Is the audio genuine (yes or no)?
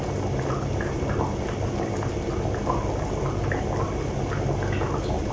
yes